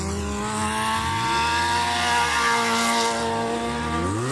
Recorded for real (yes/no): yes